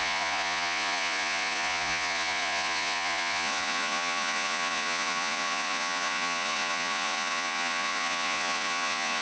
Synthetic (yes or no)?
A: yes